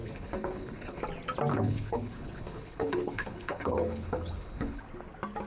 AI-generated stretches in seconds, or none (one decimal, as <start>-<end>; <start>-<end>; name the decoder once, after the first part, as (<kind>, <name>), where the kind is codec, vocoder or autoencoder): 0.0-1.0 (codec, HILCodec); 1.5-4.8